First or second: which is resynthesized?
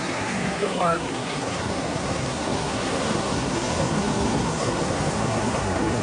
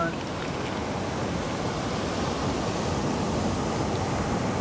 first